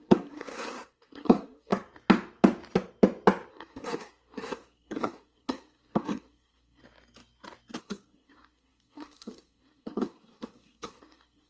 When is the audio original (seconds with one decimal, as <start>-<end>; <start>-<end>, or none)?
1.7-3.5; 6.8-7.8